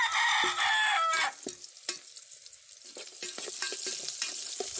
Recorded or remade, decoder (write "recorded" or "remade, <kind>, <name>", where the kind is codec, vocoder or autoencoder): recorded